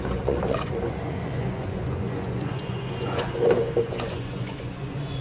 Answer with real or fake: fake